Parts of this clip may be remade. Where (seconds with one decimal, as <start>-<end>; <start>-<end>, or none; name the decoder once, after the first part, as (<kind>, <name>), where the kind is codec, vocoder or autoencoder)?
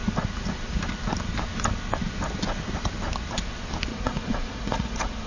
3.9-5.3 (vocoder, Vocos)